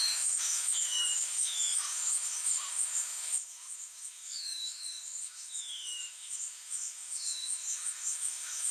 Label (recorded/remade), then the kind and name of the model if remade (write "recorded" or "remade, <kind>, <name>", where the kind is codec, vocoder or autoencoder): remade, autoencoder, DAC-VAE